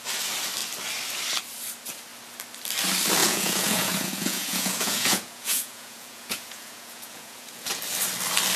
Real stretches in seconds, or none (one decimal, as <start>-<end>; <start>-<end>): 0.0-3.2; 7.8-8.6